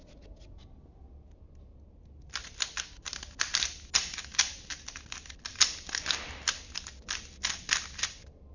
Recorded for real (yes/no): yes